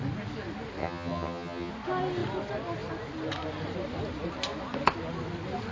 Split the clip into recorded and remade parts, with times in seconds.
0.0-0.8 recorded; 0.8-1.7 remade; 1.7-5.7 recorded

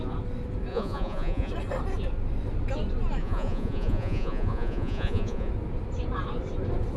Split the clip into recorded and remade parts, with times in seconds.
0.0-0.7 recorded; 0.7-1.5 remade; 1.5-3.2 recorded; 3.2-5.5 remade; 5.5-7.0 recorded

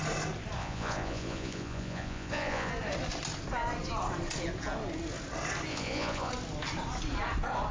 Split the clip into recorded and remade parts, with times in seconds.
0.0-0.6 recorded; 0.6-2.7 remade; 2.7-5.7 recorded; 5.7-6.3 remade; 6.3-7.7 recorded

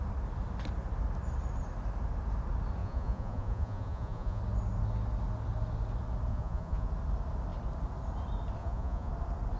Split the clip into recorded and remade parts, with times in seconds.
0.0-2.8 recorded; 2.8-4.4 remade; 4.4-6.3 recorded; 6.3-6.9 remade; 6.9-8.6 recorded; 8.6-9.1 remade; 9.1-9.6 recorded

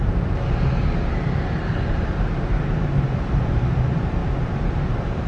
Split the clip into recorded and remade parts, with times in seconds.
0.0-1.7 recorded; 1.7-3.6 remade; 3.6-4.2 recorded; 4.2-5.3 remade

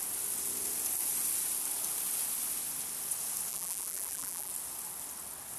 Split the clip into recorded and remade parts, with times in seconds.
0.0-3.5 recorded; 3.5-4.5 remade; 4.5-5.6 recorded

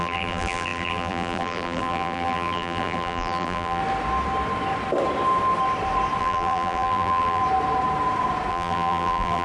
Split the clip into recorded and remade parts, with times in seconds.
0.0-3.8 remade; 3.8-6.2 recorded; 6.2-7.4 remade; 7.4-8.5 recorded; 8.5-9.4 remade